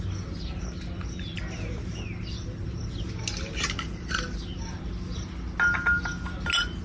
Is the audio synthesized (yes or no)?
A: no